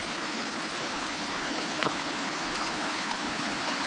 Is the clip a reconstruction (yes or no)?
yes